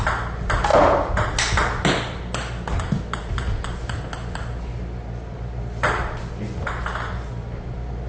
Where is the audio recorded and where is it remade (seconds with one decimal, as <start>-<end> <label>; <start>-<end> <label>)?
0.0-8.1 recorded